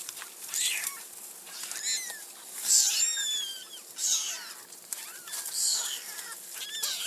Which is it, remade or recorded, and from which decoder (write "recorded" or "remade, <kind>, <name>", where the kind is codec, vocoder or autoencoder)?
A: recorded